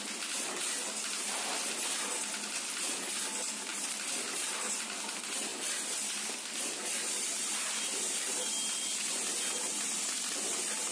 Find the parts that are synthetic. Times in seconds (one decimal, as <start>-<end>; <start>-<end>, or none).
5.5-8.5